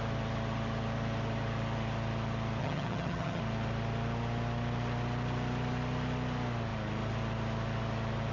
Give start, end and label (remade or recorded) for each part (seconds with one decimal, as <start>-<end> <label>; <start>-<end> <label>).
0.0-2.6 recorded; 2.6-3.4 remade; 3.4-8.3 recorded